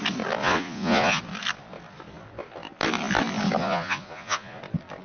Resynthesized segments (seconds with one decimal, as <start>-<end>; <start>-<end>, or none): 0.4-1.2; 3.6-4.6